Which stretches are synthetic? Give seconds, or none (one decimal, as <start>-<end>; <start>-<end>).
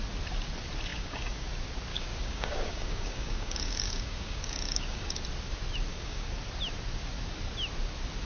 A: 0.9-1.5; 1.9-5.2; 5.9-6.4